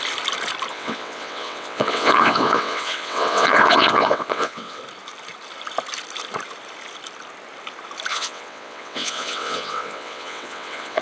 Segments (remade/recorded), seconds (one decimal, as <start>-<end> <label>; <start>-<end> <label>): 0.0-0.7 recorded; 0.7-4.8 remade; 4.8-8.1 recorded; 8.1-11.0 remade